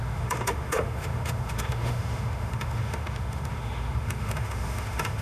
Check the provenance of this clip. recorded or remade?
remade